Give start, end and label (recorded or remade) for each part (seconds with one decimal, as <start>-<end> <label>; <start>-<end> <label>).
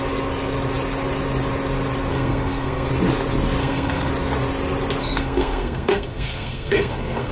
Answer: 0.0-2.1 recorded; 2.1-2.9 remade; 2.9-3.6 recorded; 3.6-4.1 remade; 4.1-5.0 recorded; 5.0-7.3 remade